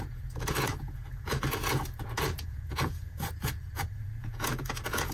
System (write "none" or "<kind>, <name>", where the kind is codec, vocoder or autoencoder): vocoder, Vocos